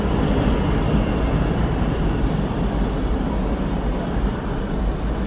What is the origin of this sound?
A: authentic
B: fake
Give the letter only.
A